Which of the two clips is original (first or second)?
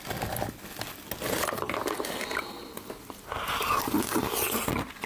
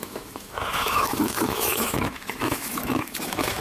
first